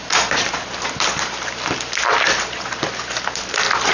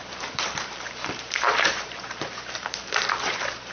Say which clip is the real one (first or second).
first